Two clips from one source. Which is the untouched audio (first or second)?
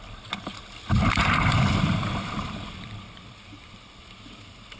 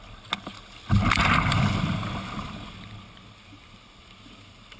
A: second